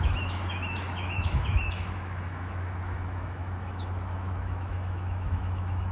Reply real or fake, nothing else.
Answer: fake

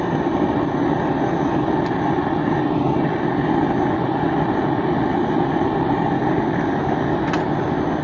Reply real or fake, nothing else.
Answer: real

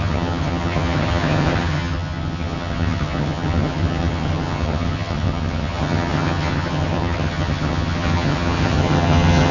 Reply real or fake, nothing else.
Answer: fake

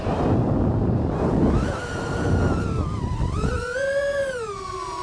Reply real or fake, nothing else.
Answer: real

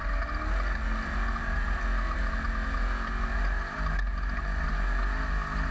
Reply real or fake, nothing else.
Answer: real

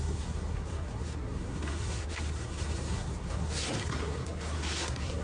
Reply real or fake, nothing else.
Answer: fake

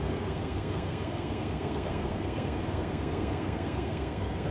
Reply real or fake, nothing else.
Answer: fake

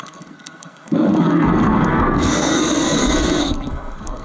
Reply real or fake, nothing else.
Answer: fake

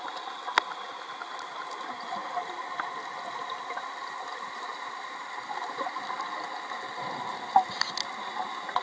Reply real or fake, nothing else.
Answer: real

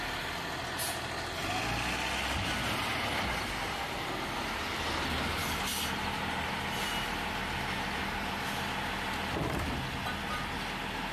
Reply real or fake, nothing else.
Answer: real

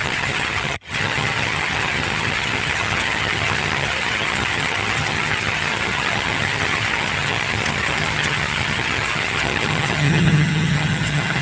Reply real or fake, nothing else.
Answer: fake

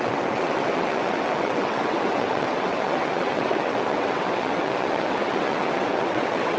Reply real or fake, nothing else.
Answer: fake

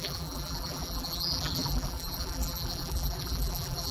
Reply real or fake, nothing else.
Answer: fake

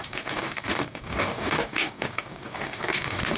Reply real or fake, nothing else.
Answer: fake